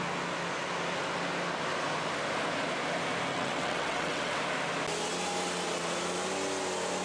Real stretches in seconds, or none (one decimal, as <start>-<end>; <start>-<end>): 0.0-3.3; 4.4-7.0